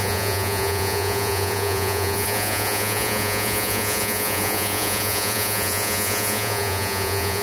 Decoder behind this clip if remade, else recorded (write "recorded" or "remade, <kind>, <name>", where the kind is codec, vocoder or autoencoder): remade, vocoder, Vocos